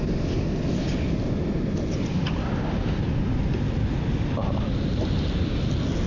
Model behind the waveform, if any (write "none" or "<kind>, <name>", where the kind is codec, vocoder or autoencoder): none